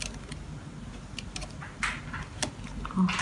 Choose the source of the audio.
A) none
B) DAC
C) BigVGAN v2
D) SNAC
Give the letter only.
A